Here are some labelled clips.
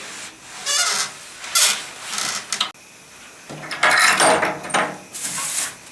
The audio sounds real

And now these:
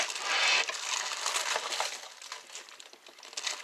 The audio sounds real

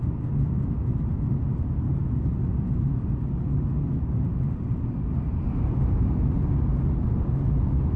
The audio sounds real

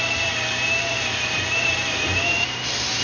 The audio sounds fake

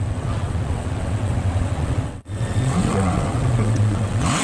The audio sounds fake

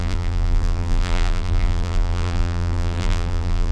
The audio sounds fake